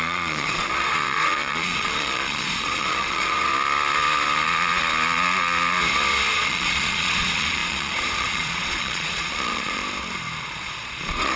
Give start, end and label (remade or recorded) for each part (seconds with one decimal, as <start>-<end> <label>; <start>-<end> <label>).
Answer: 0.0-3.5 remade; 3.5-6.3 recorded; 6.3-9.8 remade; 9.8-10.4 recorded; 10.4-11.4 remade